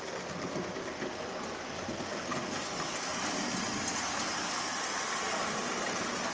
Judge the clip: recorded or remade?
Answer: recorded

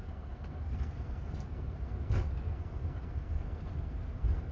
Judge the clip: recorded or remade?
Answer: remade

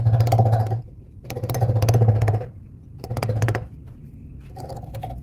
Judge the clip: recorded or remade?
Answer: remade